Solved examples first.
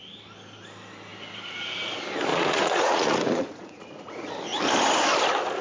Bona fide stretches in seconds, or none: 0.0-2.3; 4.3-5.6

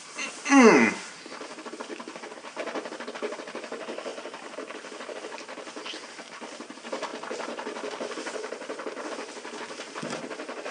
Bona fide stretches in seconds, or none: 0.0-10.7